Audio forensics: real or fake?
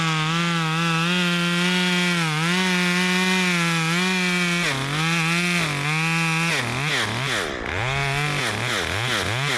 real